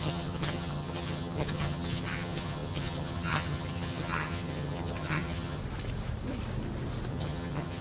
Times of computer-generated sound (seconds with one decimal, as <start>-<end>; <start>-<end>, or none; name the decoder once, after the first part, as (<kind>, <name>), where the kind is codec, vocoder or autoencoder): 0.0-5.6 (vocoder, HiFi-GAN); 7.1-7.8